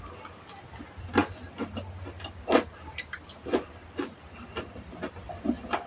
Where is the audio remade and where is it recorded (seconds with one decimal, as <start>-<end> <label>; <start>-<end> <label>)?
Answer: 0.0-5.9 recorded